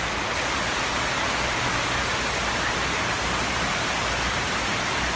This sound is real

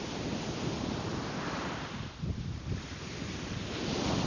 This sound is real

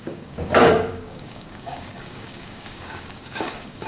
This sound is fake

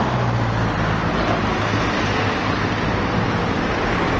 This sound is real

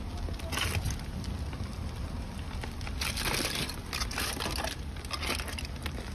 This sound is real